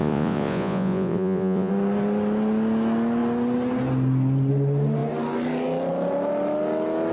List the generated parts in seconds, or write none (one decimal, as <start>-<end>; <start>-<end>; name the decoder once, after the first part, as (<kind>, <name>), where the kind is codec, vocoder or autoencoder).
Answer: 0.0-1.7 (vocoder, Vocos)